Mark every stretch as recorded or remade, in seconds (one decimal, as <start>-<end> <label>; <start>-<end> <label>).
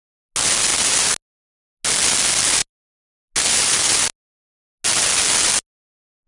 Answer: 0.0-6.3 recorded